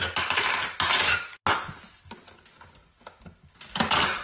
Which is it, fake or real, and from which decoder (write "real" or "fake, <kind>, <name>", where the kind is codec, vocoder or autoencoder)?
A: real